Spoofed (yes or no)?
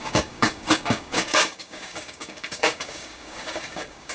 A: yes